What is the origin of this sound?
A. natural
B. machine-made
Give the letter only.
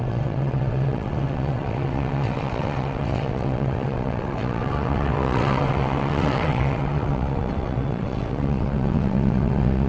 B